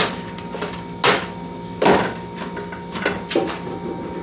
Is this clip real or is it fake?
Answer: real